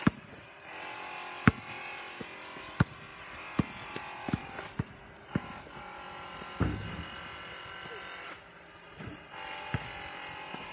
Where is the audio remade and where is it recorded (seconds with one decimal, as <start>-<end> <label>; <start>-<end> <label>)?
0.0-10.7 recorded